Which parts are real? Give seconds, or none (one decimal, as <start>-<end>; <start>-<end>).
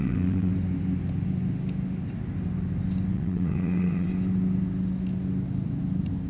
0.5-3.1; 4.1-6.3